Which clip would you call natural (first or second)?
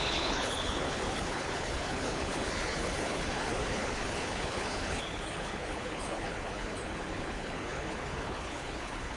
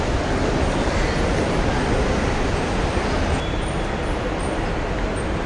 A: second